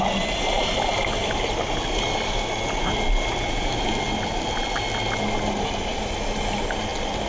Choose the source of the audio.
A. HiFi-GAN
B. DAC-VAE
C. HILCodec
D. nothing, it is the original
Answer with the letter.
D